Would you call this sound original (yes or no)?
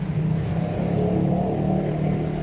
yes